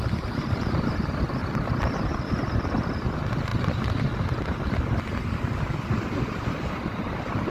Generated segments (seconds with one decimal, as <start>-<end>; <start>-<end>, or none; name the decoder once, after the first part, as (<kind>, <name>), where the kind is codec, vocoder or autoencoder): 0.0-1.4 (vocoder, BigVGAN v2); 2.2-7.5